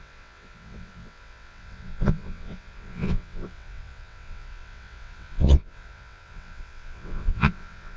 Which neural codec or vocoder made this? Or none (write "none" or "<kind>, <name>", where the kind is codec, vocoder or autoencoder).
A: vocoder, WaveNeXt